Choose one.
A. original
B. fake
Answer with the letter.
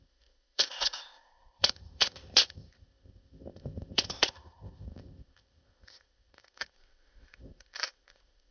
B